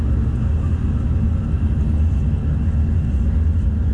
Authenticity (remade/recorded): recorded